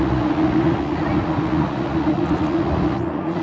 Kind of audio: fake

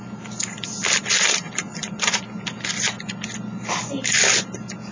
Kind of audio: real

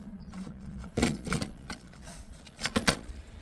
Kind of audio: fake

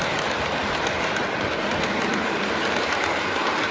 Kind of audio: real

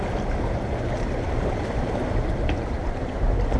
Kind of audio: real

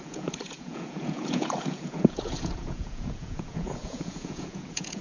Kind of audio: fake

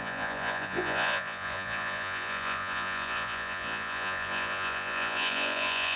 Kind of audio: fake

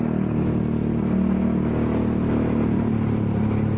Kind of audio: real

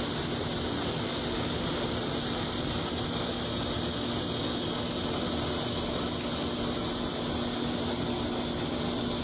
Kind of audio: real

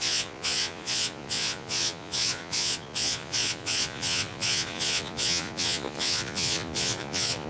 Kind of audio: fake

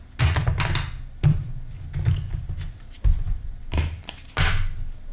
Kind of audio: real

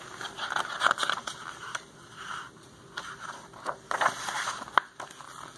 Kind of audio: real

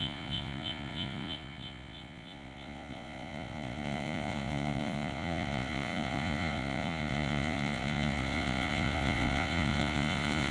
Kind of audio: fake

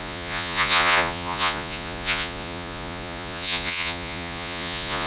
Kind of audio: fake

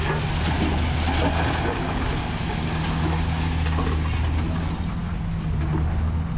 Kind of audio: real